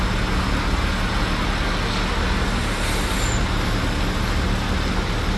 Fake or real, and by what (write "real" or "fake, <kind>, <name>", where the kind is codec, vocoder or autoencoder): real